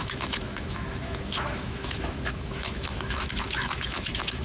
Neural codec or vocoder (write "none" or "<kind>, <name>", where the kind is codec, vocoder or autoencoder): autoencoder, DAC-VAE